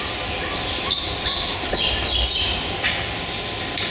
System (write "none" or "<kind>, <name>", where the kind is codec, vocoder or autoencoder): none